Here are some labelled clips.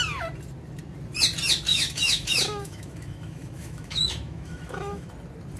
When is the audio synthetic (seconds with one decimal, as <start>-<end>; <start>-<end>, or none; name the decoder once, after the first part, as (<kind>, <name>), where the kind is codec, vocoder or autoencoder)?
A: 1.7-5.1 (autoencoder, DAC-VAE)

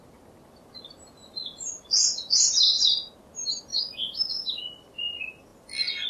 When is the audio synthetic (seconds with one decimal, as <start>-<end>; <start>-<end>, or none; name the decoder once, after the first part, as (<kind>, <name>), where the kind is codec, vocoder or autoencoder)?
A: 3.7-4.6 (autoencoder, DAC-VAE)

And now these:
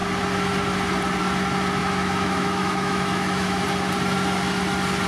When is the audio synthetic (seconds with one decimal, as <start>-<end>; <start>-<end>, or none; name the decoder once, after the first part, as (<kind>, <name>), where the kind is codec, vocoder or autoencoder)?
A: 1.8-3.6 (autoencoder, DAC-VAE)

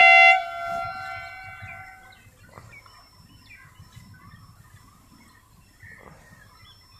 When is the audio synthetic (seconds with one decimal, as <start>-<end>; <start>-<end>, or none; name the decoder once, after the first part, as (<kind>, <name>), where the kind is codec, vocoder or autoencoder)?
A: none

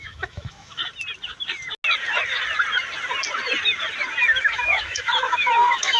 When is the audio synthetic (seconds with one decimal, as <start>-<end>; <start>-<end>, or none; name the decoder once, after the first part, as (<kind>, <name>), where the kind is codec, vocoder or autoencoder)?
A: 0.0-0.8 (autoencoder, DAC-VAE); 4.4-6.0

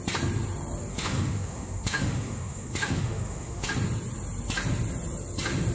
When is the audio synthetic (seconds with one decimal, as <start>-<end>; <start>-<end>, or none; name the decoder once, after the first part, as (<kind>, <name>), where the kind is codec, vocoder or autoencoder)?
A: 0.9-3.7 (autoencoder, DAC-VAE)

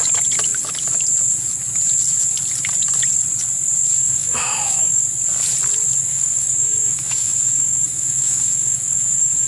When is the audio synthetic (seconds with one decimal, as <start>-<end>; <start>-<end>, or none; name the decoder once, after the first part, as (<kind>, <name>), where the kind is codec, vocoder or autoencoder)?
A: 4.0-5.0 (autoencoder, DAC-VAE); 6.1-9.5